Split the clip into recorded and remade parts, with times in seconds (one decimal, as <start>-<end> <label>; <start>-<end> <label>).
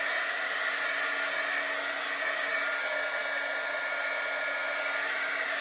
0.0-5.6 recorded